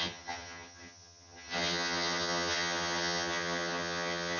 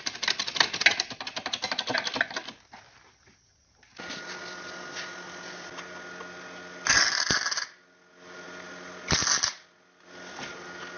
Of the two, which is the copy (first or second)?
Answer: first